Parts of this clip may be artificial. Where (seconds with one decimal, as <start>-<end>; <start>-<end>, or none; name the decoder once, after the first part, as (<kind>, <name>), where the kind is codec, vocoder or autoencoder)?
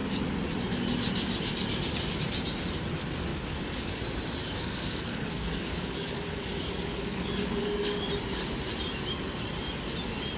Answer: 3.3-4.0 (codec, DAC); 4.4-8.1